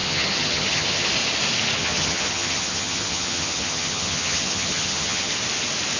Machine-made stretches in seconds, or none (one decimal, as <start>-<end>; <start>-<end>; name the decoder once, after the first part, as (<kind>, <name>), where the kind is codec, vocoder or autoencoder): 0.0-1.1 (vocoder, HiFi-GAN); 1.8-5.3